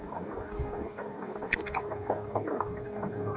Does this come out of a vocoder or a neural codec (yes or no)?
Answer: yes